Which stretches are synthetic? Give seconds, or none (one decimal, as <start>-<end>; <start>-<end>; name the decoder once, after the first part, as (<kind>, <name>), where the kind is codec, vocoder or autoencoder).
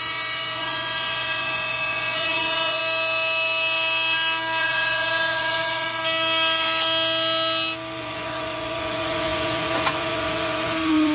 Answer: 0.0-2.8 (vocoder, Vocos); 4.6-6.0; 8.0-11.1